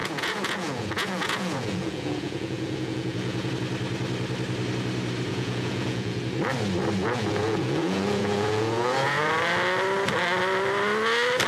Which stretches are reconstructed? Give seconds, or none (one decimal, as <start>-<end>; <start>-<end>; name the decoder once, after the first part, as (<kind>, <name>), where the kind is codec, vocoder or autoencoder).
0.0-3.5 (vocoder, Vocos); 5.3-6.2; 7.0-9.3